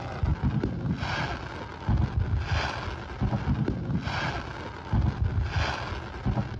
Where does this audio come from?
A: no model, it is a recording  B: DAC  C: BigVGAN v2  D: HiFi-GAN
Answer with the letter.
A